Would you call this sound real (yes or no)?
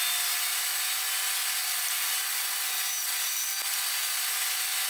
yes